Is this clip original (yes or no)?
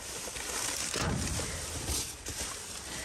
yes